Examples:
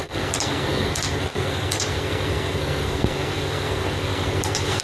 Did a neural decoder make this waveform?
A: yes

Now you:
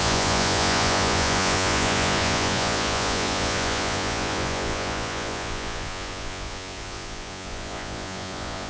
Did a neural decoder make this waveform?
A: yes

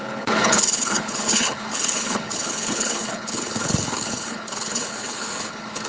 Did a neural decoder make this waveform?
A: yes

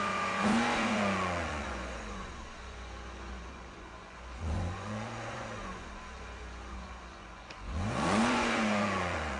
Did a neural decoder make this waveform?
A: yes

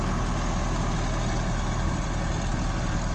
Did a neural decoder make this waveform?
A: no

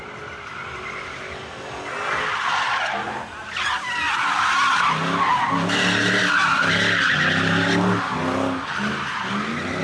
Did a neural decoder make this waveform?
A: no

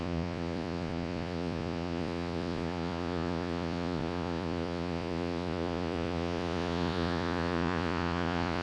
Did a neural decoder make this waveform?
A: yes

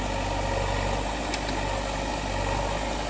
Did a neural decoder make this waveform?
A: no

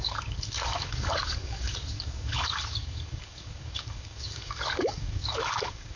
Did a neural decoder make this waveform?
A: yes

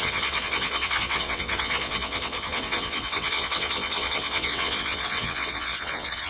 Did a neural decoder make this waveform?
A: yes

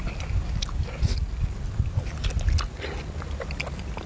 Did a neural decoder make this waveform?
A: no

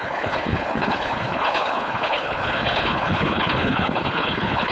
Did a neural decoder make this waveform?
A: yes